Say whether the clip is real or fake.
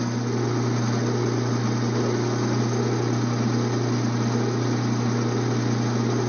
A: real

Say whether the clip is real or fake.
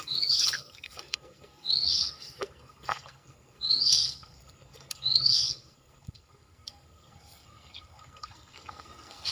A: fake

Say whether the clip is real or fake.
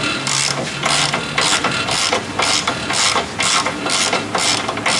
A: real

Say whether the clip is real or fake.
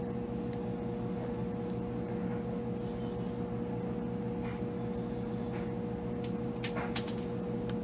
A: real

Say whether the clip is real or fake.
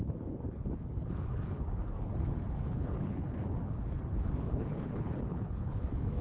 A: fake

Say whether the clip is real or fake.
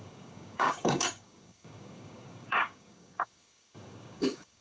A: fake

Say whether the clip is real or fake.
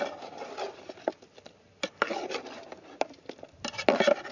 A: real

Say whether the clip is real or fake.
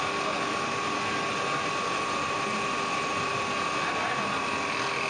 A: real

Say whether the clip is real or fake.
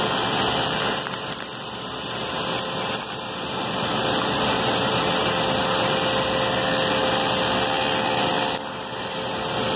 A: real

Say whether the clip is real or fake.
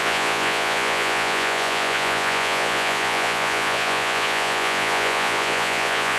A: fake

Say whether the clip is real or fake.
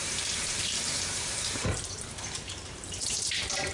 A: fake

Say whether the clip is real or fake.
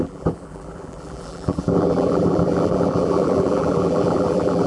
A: fake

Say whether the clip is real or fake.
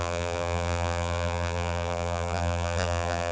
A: fake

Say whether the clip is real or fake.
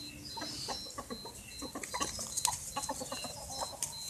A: real